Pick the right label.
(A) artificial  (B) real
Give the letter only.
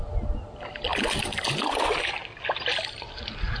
B